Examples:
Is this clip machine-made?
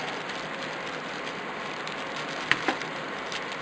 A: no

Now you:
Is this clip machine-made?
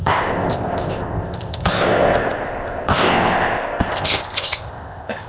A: yes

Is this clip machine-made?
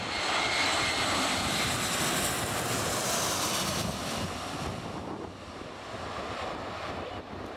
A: no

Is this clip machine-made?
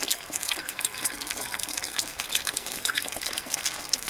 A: yes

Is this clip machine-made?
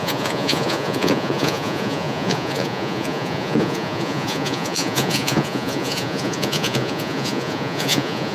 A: yes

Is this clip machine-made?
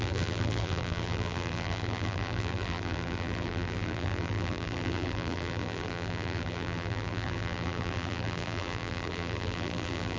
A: yes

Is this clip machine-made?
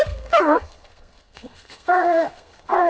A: yes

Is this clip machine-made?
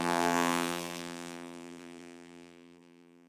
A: yes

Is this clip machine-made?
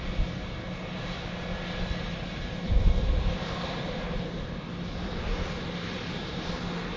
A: no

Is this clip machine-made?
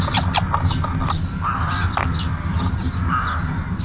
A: no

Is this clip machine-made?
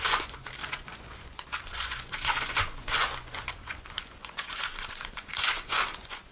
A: yes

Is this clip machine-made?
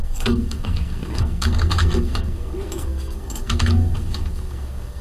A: yes